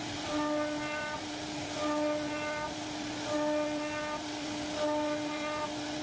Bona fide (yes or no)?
yes